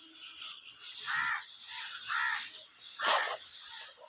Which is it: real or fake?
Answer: fake